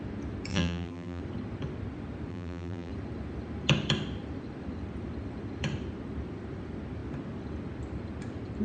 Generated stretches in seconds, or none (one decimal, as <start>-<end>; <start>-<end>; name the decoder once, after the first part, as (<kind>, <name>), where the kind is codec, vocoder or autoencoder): 0.5-1.2 (vocoder, BigVGAN v2); 2.3-2.9